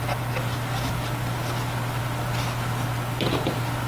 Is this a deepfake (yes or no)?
no